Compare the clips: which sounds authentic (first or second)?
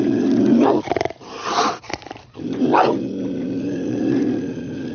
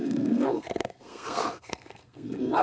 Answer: first